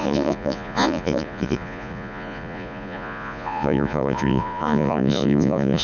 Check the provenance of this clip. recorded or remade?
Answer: remade